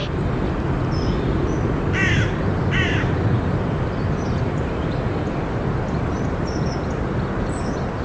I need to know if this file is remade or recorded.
recorded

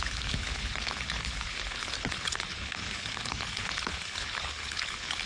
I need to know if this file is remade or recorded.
remade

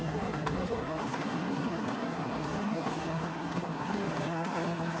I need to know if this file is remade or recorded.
remade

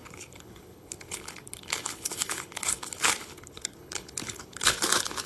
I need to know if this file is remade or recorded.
remade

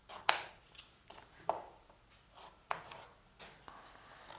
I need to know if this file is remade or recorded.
recorded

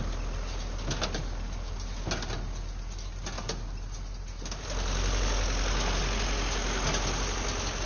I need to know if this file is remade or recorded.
recorded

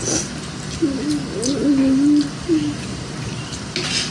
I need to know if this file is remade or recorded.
recorded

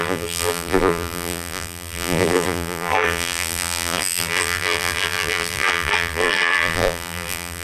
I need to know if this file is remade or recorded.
remade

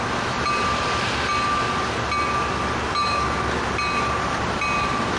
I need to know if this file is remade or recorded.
recorded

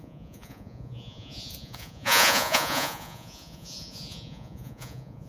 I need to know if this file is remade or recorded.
remade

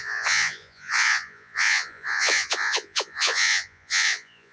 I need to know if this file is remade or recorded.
remade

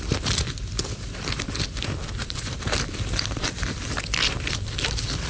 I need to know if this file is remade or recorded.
remade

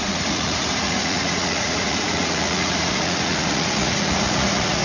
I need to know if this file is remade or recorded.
remade